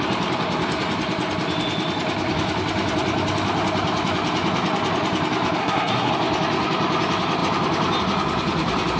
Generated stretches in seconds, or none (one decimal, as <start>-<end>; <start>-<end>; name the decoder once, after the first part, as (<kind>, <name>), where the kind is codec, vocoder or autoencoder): 5.6-6.1 (codec, SNAC)